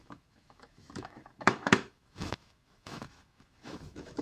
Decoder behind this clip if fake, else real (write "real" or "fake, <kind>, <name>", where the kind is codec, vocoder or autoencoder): fake, autoencoder, DAC-VAE